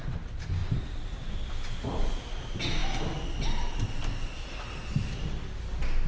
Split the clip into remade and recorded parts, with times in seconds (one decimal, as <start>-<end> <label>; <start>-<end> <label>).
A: 0.0-0.6 recorded; 0.6-2.1 remade; 2.1-2.8 recorded; 2.8-4.4 remade; 4.4-6.1 recorded